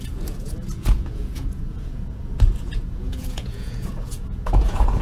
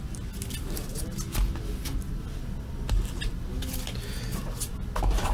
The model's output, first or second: first